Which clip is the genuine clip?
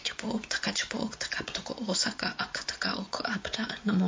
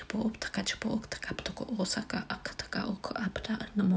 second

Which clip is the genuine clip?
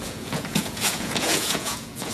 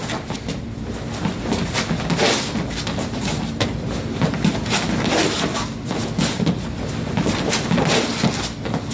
second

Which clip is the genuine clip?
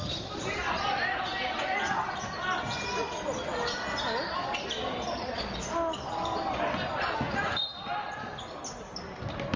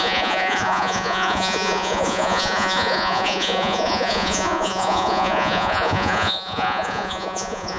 first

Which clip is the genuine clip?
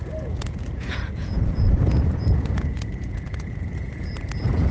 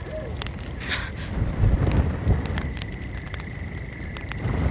second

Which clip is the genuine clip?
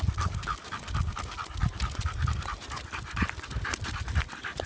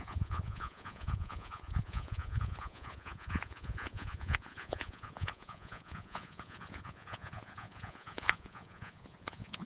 first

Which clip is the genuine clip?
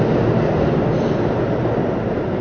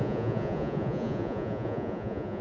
first